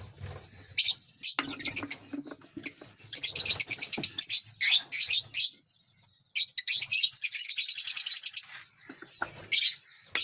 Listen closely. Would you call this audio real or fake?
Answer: real